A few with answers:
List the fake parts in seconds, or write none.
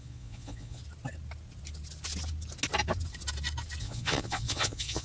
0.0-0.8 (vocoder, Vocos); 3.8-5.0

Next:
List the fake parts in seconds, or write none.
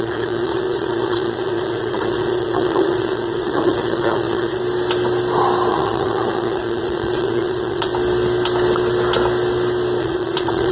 0.0-4.6 (vocoder, Vocos); 5.7-7.9; 10.0-10.7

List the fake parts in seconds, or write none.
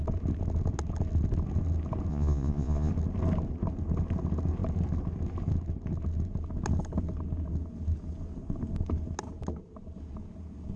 2.1-2.9 (vocoder, Vocos)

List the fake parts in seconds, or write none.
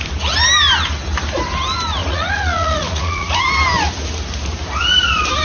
2.0-3.4 (vocoder, Vocos)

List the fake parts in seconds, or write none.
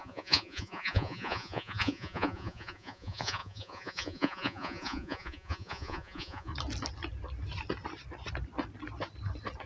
0.0-6.5 (vocoder, Vocos)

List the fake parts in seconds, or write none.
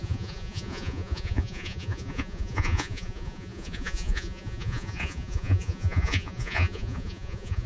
0.0-7.7 (vocoder, Vocos)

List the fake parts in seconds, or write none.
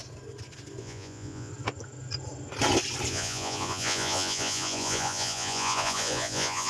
0.8-1.5 (vocoder, Vocos); 3.1-6.7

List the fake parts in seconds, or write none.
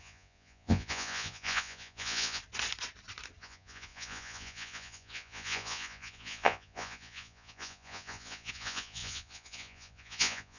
0.0-2.4 (vocoder, Vocos); 3.4-10.6